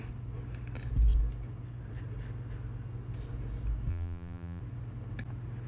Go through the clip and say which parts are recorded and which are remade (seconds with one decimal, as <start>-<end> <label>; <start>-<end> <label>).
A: 0.0-3.9 recorded; 3.9-4.6 remade; 4.6-5.7 recorded